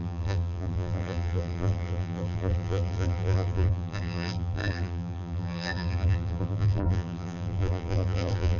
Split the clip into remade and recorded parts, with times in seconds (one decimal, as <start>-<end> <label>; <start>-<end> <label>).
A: 0.0-8.6 remade